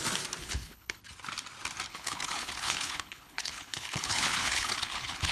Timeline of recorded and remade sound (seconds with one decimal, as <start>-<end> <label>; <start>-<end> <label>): 0.0-0.4 recorded; 0.4-1.0 remade; 1.0-1.9 recorded; 1.9-5.3 remade